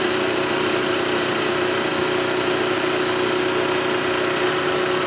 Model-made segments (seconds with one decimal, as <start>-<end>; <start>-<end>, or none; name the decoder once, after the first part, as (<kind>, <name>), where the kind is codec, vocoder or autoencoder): 0.0-1.9 (vocoder, BigVGAN v2)